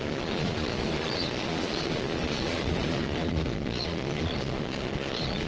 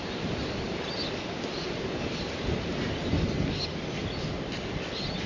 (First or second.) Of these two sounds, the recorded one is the second